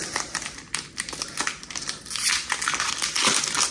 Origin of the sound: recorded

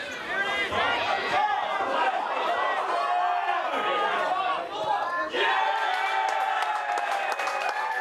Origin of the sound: recorded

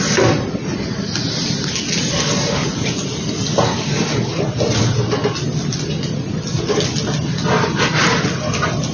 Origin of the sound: recorded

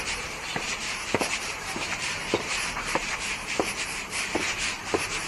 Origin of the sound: remade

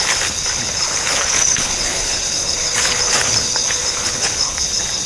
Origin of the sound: remade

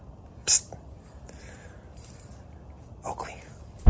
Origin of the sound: remade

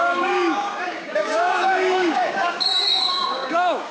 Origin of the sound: remade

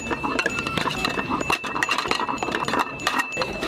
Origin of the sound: remade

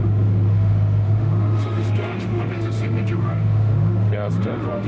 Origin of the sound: remade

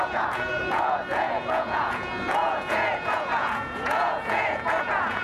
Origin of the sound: remade